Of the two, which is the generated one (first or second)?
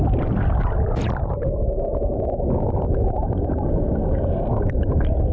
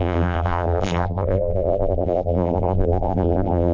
second